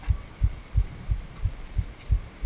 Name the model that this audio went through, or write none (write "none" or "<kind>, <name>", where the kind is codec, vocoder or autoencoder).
none